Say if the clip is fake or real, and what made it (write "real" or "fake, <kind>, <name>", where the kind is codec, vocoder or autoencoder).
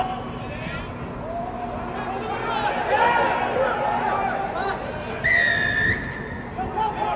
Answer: real